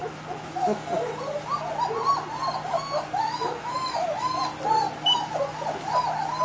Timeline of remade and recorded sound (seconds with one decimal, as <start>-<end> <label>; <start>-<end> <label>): 0.0-0.8 remade; 0.8-3.2 recorded; 3.2-4.4 remade; 4.4-6.4 recorded